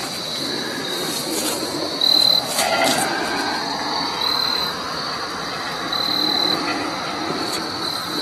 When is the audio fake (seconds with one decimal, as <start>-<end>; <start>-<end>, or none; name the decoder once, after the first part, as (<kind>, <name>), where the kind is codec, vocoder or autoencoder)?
none